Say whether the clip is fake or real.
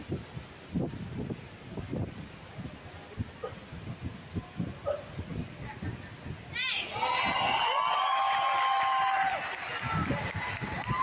real